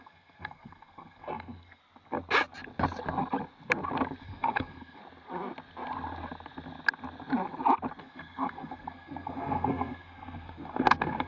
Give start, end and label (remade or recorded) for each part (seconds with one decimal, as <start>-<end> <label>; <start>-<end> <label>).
0.0-1.8 remade; 1.8-4.2 recorded; 4.2-5.0 remade; 5.0-8.0 recorded; 8.0-11.3 remade